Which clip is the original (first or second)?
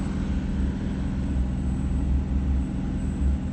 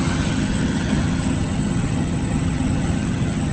first